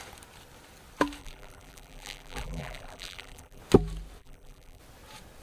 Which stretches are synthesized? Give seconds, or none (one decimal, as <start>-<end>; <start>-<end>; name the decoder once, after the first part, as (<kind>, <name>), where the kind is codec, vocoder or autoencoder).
1.2-3.6 (vocoder, BigVGAN v2); 4.2-4.8